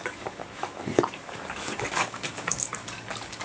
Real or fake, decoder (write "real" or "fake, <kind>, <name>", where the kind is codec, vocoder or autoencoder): fake, codec, DAC